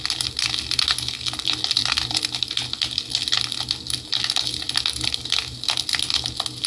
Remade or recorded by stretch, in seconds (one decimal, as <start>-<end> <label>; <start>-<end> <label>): 0.0-6.7 recorded